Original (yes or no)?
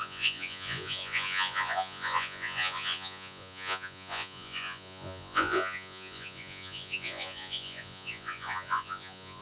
no